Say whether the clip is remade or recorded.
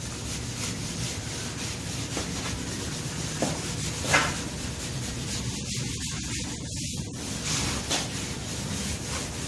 recorded